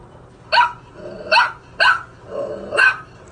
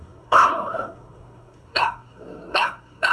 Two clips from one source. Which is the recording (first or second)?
first